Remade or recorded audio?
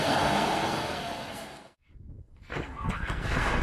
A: remade